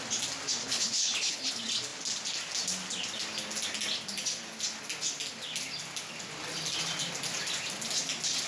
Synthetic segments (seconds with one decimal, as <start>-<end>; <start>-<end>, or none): 0.6-1.5